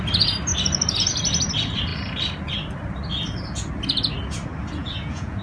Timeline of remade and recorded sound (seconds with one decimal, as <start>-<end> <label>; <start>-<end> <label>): 0.0-4.8 recorded; 4.8-5.4 remade

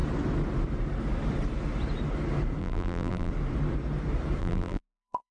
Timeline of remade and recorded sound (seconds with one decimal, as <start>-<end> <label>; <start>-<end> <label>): 0.0-2.6 recorded; 2.6-3.3 remade; 3.3-4.4 recorded; 4.4-5.3 remade

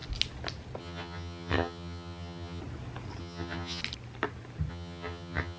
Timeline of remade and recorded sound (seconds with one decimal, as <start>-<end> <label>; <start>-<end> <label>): 0.0-0.8 recorded; 0.8-2.6 remade; 2.6-3.2 recorded; 3.2-3.8 remade; 3.8-4.7 recorded; 4.7-5.6 remade

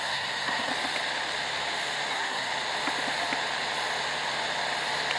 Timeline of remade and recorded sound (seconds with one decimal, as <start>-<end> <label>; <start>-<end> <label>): 0.0-0.7 remade; 0.7-2.1 recorded; 2.1-2.5 remade; 2.5-5.2 recorded

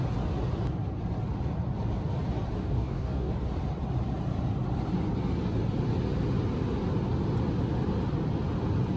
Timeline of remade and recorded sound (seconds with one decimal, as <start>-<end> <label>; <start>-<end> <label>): 0.0-2.6 recorded; 2.6-3.3 remade; 3.3-9.0 recorded